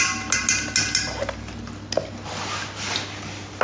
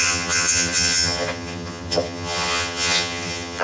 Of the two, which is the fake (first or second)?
second